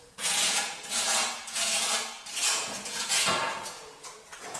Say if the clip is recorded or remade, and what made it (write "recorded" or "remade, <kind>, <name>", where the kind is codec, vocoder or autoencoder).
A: remade, vocoder, Vocos